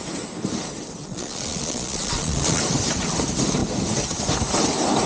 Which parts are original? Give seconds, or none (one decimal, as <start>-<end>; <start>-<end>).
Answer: 0.0-1.0; 2.6-5.1